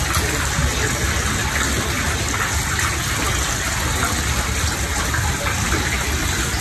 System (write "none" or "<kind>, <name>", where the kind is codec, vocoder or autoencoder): none